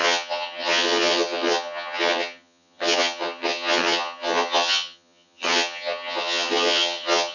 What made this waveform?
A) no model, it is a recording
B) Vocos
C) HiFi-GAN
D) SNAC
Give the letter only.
C